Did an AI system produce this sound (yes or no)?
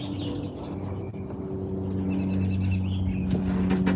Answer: no